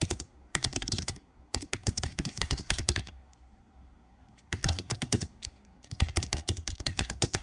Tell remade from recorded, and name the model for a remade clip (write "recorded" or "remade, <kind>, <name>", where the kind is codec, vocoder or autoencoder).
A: remade, codec, SNAC